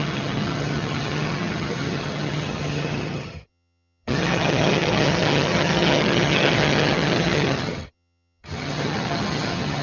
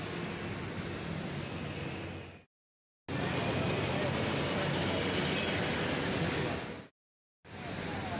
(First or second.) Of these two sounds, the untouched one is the second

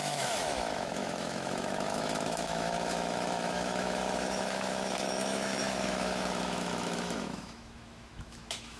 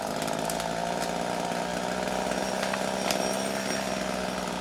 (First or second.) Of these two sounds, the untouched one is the second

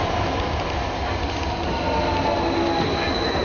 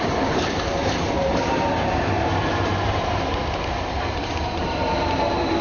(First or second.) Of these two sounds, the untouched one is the first